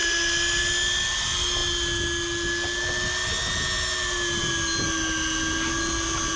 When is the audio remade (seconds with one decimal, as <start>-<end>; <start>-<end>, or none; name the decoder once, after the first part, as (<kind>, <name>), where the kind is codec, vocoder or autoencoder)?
none